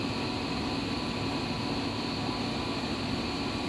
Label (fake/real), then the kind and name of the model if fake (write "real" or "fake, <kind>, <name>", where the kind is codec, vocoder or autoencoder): real